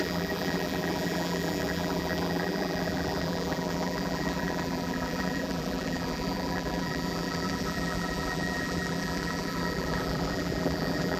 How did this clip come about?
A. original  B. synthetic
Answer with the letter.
B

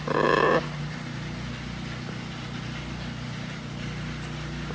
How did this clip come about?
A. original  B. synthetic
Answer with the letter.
A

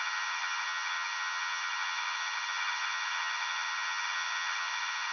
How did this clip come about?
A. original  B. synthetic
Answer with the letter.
B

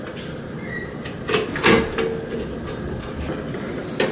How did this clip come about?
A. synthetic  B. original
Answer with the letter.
B